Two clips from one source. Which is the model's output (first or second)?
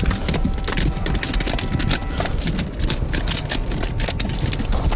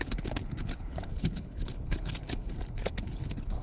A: second